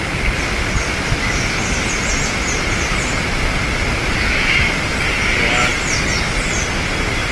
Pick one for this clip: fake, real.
real